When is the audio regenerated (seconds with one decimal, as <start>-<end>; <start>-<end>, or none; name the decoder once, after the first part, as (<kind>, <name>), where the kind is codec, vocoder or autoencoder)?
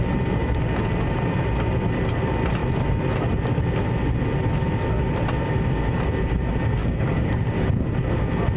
6.8-7.4 (codec, DAC)